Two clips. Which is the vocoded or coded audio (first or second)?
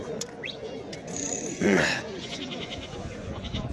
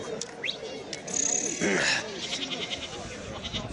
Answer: first